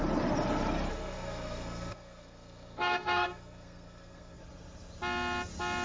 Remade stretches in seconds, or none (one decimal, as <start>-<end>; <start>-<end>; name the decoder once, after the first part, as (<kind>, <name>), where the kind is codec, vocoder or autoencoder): 0.9-4.4 (codec, SNAC)